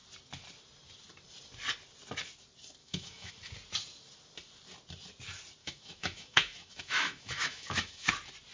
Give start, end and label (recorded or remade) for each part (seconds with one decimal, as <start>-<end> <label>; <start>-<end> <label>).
0.0-2.8 recorded; 2.8-3.3 remade; 3.3-5.6 recorded; 5.6-8.1 remade; 8.1-8.5 recorded